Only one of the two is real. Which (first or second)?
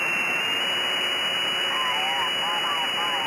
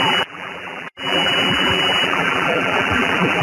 first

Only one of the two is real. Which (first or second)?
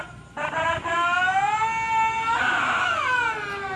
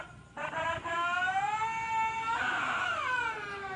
first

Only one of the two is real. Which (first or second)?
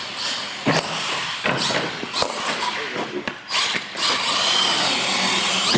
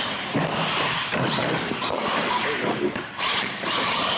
first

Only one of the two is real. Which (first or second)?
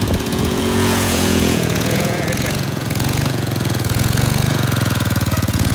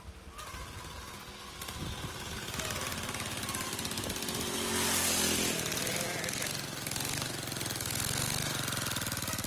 second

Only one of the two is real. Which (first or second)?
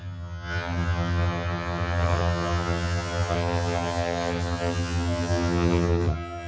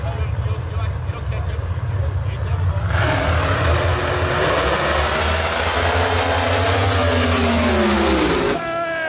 second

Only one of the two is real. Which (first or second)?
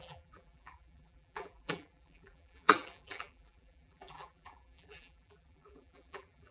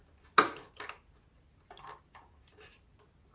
second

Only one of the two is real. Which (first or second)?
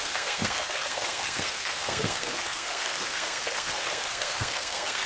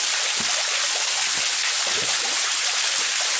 second